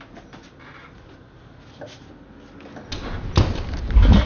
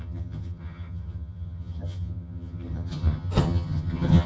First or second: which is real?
first